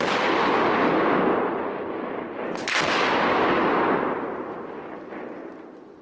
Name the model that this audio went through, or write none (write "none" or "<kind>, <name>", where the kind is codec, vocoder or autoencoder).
none